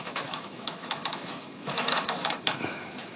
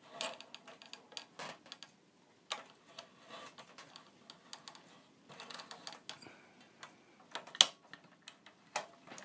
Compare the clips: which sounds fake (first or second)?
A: first